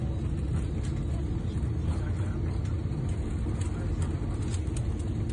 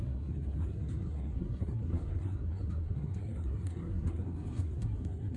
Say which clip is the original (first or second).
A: first